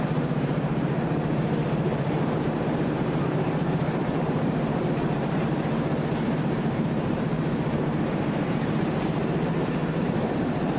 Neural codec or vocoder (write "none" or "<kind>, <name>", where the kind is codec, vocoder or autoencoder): vocoder, BigVGAN v2